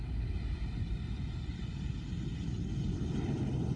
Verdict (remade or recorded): recorded